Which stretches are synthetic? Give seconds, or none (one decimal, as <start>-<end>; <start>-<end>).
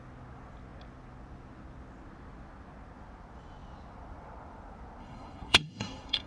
5.0-6.3